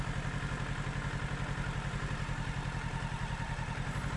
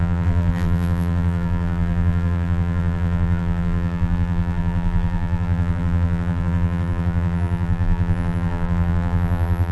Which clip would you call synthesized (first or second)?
second